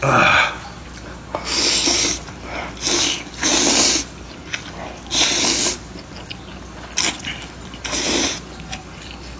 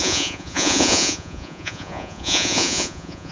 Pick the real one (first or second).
first